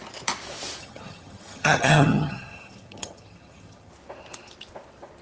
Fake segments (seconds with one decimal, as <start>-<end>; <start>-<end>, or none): 0.8-3.9